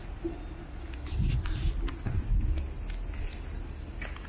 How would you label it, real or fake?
real